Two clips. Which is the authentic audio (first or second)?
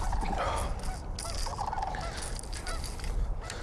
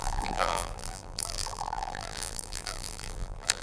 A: first